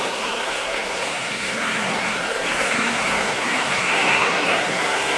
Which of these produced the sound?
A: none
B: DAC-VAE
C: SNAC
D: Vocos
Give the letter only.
C